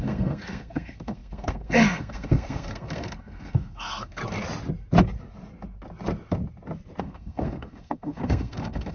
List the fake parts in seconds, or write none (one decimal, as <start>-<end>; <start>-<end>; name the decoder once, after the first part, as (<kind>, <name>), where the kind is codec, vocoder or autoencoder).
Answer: 0.0-4.2 (codec, SNAC); 7.0-8.9